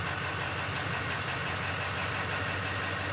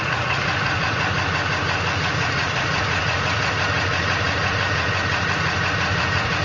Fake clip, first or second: second